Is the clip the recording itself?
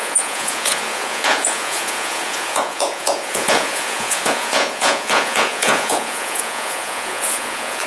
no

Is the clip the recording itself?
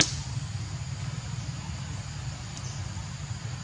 yes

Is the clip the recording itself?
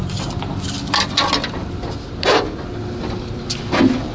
yes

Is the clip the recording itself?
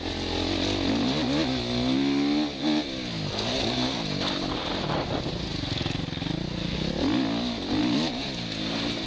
yes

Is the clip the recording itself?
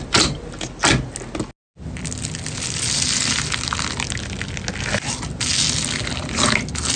yes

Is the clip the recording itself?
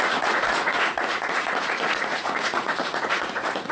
no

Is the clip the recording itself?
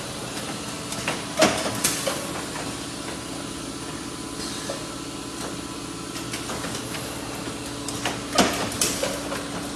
yes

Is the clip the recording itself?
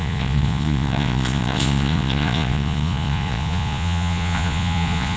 no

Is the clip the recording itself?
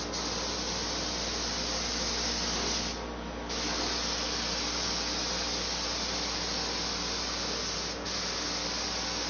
yes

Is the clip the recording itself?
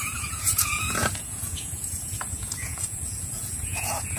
no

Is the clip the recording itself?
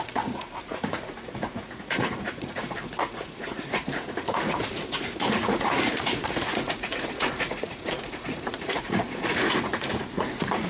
no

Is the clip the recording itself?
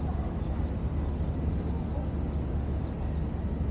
yes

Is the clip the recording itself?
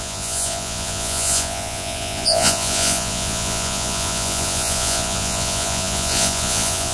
no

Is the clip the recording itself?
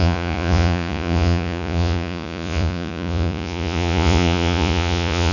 no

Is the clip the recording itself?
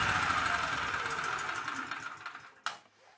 yes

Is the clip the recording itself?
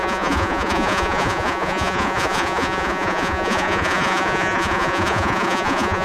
no